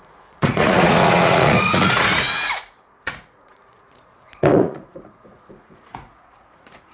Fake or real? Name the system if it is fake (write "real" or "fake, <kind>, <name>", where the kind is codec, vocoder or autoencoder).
fake, vocoder, Vocos